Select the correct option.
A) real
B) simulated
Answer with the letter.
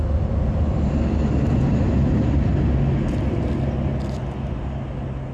A